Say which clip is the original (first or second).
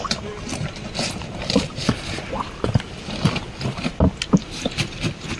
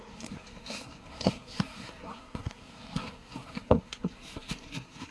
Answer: first